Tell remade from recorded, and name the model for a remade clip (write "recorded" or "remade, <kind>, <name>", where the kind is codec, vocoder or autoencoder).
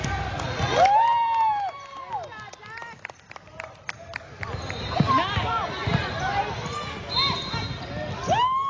recorded